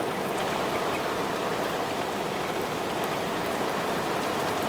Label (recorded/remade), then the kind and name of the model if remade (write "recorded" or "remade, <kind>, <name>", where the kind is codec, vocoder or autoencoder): recorded